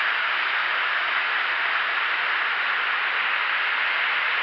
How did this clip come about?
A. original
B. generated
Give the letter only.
A